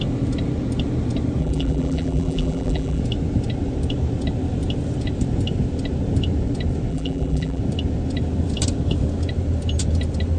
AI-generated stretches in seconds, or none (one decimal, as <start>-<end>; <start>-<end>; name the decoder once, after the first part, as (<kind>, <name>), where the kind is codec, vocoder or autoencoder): 1.4-3.0 (vocoder, BigVGAN v2); 6.9-7.6